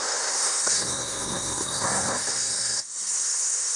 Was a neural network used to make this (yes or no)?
yes